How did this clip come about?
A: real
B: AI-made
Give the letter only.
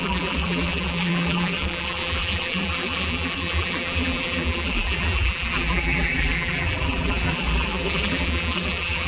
B